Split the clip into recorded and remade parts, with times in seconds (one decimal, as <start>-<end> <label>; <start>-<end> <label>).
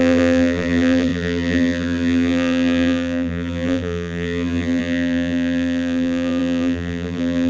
0.0-7.5 remade